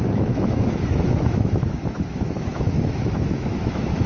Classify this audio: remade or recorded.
remade